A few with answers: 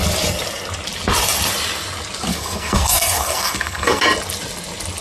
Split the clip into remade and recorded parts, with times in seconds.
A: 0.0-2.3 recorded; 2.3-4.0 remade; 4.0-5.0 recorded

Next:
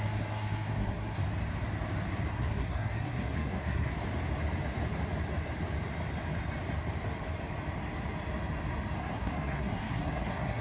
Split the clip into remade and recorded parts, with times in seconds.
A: 0.0-1.2 remade; 1.2-2.3 recorded; 2.3-3.9 remade; 3.9-9.0 recorded; 9.0-10.6 remade

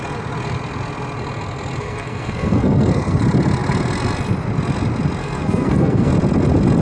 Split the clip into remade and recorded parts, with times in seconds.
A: 0.0-1.8 recorded; 1.8-3.2 remade; 3.2-5.2 recorded; 5.2-6.1 remade; 6.1-6.8 recorded

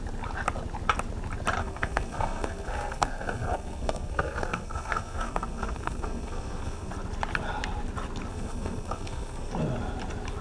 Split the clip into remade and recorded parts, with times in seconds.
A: 0.0-1.6 recorded; 1.6-6.9 remade; 6.9-8.3 recorded; 8.3-9.5 remade; 9.5-10.4 recorded

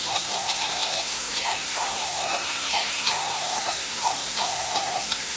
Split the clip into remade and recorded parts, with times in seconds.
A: 0.0-5.4 remade